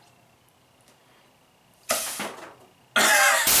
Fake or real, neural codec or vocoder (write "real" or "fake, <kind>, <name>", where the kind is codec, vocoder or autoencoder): real